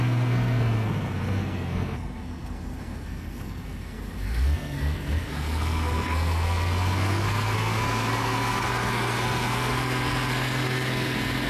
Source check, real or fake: fake